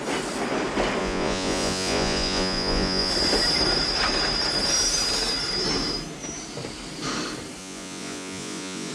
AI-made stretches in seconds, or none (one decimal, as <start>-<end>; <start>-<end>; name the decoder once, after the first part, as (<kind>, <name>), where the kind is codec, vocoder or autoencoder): 1.0-3.1 (vocoder, Vocos); 7.6-8.9